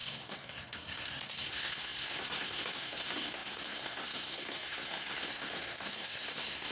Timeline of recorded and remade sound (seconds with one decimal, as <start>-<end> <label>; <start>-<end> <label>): 0.0-6.7 remade

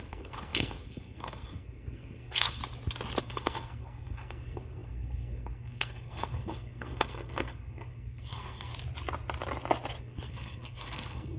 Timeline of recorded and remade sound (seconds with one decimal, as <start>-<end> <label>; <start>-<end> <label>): 0.0-2.6 remade; 2.6-3.2 recorded; 3.2-8.7 remade; 8.7-10.0 recorded; 10.0-11.4 remade

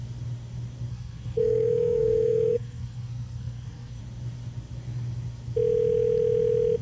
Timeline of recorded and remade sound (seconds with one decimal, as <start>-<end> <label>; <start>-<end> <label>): 0.0-0.9 recorded; 0.9-4.0 remade; 4.0-6.8 recorded

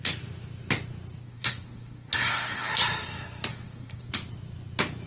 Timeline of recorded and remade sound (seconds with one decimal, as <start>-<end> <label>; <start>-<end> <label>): 0.0-1.2 recorded; 1.2-2.7 remade; 2.7-3.5 recorded; 3.5-4.1 remade; 4.1-5.1 recorded

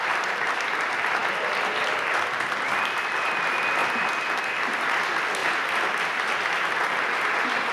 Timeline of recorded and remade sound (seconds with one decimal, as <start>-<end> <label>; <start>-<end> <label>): 0.0-7.7 recorded

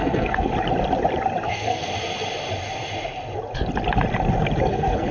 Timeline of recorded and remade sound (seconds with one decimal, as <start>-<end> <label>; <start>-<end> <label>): 0.0-0.5 remade; 0.5-1.5 recorded; 1.5-1.9 remade; 1.9-4.6 recorded; 4.6-5.1 remade

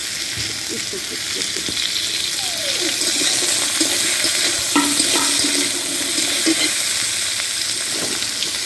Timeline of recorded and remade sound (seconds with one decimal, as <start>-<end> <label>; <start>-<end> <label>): 0.0-8.7 recorded